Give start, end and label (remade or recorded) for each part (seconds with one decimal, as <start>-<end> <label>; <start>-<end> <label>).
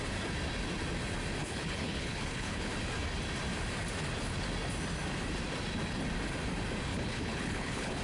0.0-1.4 recorded; 1.4-2.7 remade; 2.7-6.9 recorded; 6.9-8.0 remade